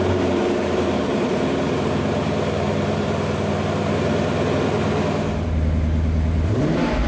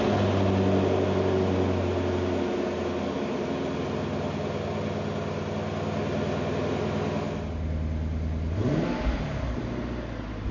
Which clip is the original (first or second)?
second